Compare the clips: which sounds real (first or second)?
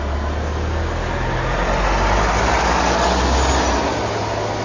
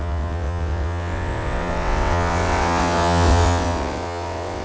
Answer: first